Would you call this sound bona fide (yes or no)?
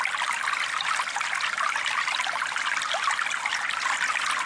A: yes